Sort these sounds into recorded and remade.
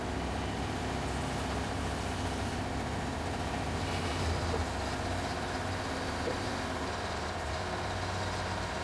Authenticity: recorded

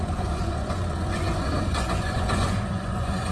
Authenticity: remade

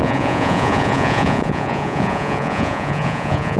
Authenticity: remade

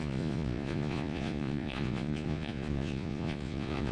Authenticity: remade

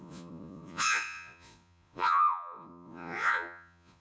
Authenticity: remade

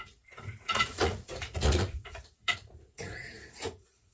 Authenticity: remade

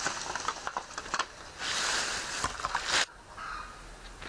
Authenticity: recorded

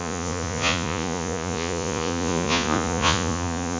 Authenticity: remade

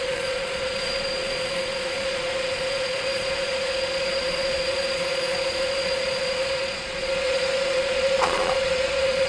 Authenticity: remade